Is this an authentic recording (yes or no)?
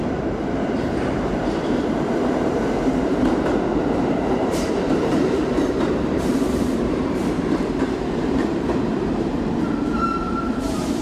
no